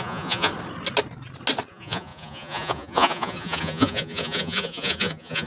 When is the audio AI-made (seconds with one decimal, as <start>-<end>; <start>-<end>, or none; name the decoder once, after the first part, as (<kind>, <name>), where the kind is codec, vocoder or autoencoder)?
0.0-0.5 (vocoder, Vocos); 1.7-5.5